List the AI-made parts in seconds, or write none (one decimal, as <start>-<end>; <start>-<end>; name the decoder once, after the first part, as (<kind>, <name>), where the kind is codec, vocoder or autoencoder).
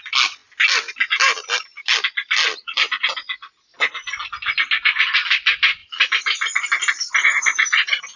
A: none